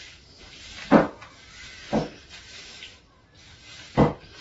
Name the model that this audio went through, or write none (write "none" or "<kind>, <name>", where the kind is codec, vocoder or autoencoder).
none